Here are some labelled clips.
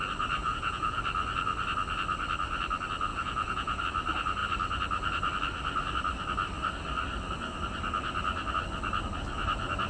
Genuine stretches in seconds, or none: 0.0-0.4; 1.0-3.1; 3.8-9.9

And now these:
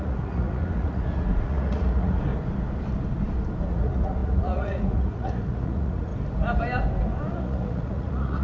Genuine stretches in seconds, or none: 2.3-3.6; 6.1-7.3

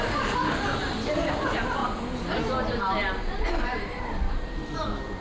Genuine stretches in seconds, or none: 0.0-5.2

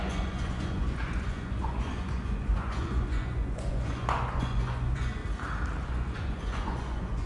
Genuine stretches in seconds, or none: 5.2-5.8

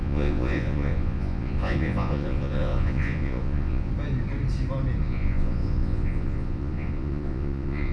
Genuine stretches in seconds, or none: 3.9-5.0

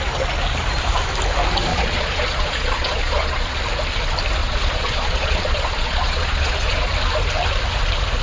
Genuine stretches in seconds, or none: 0.0-1.7; 3.6-4.4; 6.9-8.2

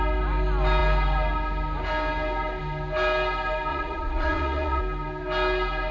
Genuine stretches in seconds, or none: 0.0-3.7; 4.8-5.9